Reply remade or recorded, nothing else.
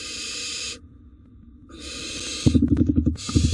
recorded